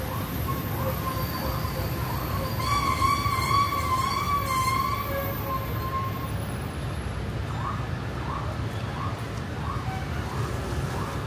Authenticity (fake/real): real